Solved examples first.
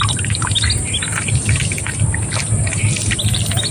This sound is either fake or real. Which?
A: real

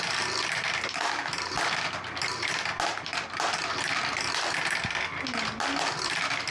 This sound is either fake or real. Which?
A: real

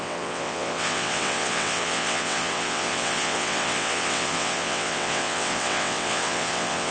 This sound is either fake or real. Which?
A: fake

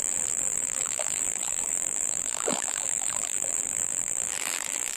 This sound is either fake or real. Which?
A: fake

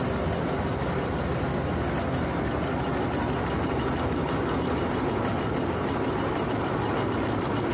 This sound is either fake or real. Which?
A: real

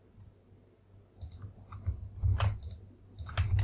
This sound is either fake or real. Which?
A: real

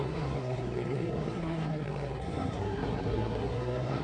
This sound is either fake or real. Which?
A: fake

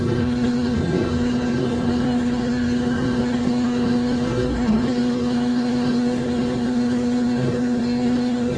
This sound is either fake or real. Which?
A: fake